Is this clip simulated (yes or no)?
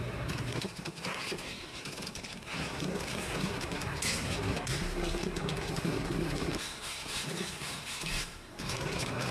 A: yes